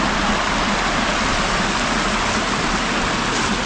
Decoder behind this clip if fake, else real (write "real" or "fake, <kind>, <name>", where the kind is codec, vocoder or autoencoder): real